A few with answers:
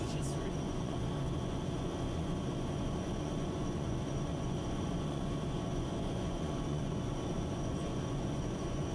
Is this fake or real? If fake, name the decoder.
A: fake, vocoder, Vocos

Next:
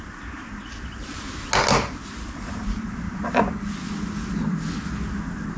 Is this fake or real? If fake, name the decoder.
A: real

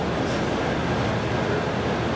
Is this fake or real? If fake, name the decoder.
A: real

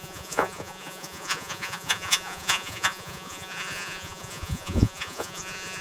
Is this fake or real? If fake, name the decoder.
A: fake, vocoder, Vocos